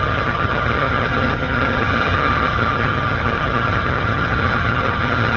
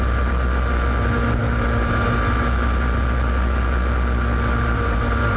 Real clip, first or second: second